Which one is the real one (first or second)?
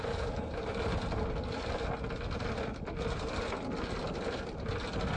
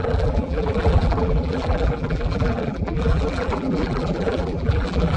first